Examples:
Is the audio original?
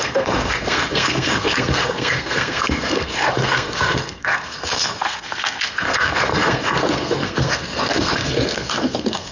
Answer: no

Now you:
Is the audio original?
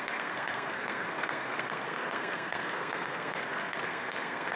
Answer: no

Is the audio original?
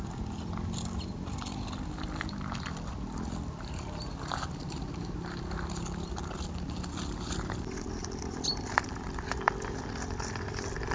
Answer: yes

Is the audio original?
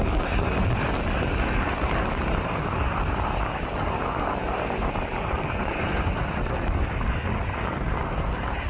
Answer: yes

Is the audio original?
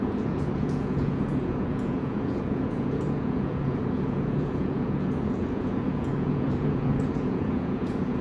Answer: no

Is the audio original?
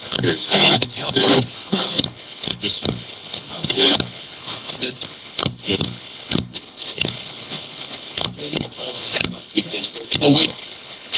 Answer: no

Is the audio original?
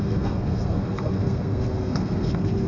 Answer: no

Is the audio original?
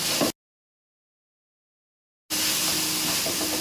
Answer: yes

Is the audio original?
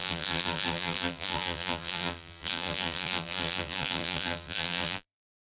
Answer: no